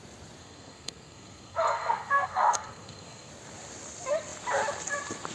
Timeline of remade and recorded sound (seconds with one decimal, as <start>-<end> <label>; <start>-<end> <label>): 0.0-0.4 recorded; 0.4-3.3 remade; 3.3-5.3 recorded